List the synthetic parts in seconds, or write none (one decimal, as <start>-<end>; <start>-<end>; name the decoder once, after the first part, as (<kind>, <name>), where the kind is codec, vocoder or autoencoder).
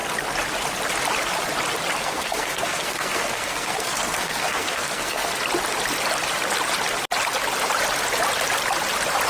2.0-5.3 (codec, SNAC)